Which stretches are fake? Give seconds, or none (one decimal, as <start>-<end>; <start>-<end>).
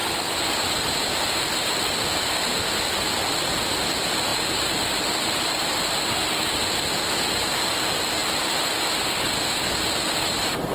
4.3-6.1